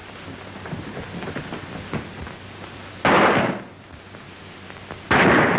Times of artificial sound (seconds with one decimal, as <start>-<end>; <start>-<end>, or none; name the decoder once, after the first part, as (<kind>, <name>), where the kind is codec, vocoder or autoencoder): none